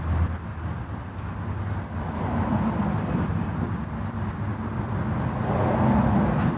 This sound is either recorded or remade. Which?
recorded